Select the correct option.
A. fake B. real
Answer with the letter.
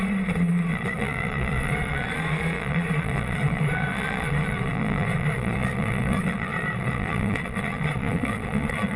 A